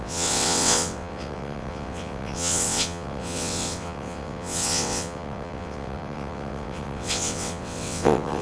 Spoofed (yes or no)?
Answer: yes